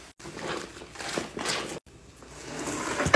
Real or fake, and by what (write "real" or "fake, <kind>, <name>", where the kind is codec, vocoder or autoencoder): real